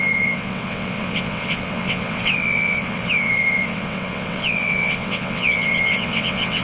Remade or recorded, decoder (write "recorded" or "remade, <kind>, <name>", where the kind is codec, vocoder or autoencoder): remade, vocoder, WaveNeXt